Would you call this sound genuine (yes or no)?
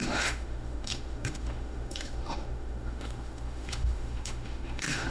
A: no